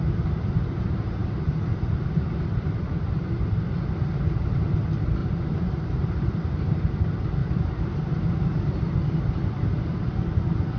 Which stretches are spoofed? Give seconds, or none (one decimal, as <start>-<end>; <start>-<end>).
5.2-6.9; 7.4-8.8